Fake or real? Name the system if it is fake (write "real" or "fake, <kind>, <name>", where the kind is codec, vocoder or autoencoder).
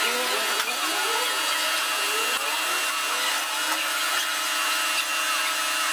real